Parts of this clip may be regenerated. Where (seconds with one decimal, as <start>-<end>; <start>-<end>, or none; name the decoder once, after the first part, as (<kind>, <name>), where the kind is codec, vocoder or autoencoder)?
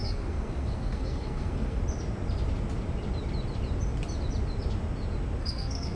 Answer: 0.0-1.8 (codec, SNAC); 5.4-6.0